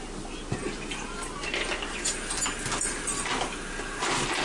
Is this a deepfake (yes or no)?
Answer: no